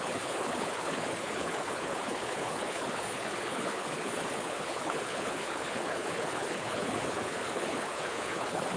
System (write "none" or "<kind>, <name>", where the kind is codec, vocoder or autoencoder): codec, HILCodec